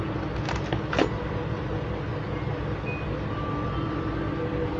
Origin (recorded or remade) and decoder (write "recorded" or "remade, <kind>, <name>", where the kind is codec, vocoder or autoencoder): recorded